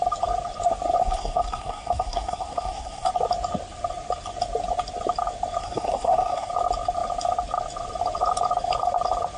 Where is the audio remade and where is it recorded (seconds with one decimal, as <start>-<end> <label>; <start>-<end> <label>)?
0.0-1.0 recorded; 1.0-3.1 remade; 3.1-5.6 recorded; 5.6-6.5 remade; 6.5-9.4 recorded